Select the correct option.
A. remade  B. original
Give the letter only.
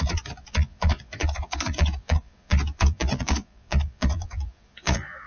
A